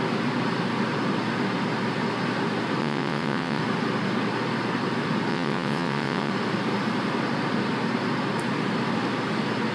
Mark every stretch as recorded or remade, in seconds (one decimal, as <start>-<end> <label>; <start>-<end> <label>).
0.0-2.8 recorded; 2.8-3.6 remade; 3.6-5.3 recorded; 5.3-6.3 remade; 6.3-9.7 recorded